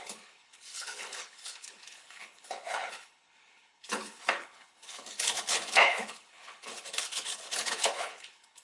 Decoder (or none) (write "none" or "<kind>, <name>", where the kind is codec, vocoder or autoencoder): codec, HILCodec